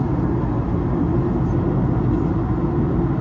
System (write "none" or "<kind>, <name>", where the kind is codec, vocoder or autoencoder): none